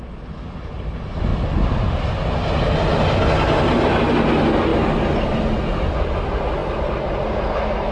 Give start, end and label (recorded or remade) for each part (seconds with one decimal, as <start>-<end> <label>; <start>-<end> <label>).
0.0-4.7 recorded; 4.7-5.4 remade; 5.4-7.9 recorded